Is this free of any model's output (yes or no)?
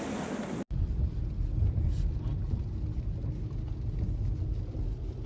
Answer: yes